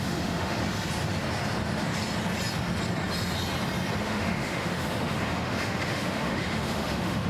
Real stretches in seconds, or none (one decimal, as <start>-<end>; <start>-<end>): 0.6-4.0